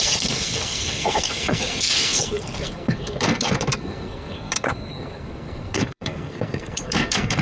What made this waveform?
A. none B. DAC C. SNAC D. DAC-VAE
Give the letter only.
C